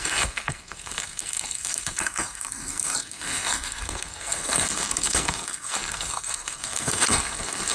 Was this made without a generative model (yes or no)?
no